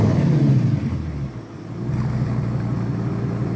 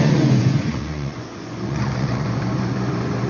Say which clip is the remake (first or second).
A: second